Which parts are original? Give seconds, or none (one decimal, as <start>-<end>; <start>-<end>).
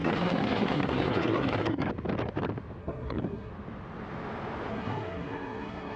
1.9-2.8; 3.5-4.7